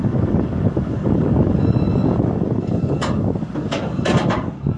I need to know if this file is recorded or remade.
remade